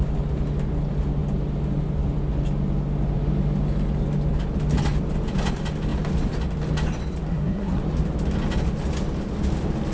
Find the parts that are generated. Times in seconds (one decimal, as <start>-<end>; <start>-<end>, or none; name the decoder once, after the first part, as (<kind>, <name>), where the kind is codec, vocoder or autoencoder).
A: 7.3-7.8 (codec, SNAC)